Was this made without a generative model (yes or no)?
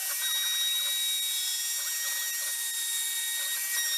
yes